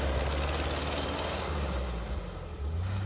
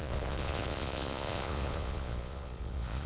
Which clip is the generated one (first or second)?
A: second